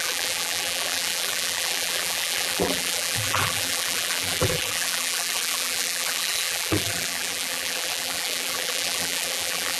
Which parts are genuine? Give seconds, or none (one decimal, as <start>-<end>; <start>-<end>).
none